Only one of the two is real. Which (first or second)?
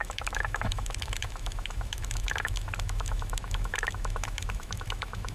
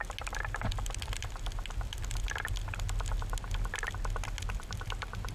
second